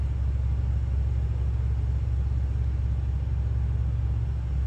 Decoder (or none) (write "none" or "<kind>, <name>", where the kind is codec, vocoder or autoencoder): none